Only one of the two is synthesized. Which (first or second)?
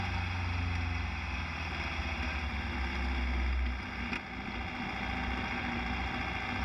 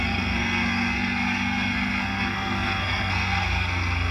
second